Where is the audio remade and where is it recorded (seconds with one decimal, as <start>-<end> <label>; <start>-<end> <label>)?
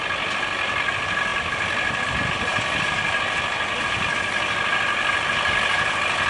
0.0-6.3 recorded